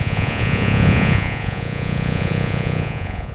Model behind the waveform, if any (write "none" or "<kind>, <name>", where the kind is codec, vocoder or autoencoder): vocoder, Vocos